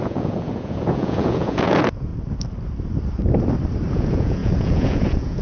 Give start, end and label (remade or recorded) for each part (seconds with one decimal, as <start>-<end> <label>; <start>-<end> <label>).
0.0-2.1 remade; 2.1-3.9 recorded; 3.9-5.4 remade